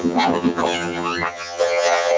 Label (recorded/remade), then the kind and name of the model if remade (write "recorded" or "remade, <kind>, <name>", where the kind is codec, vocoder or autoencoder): remade, vocoder, HiFi-GAN